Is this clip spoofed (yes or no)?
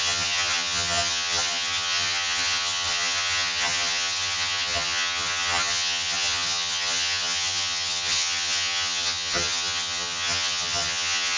yes